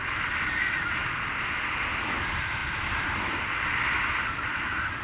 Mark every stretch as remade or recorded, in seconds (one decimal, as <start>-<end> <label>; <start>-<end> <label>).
0.0-5.0 recorded